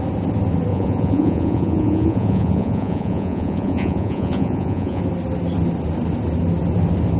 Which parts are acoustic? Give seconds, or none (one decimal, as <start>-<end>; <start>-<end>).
0.0-0.7; 5.0-7.2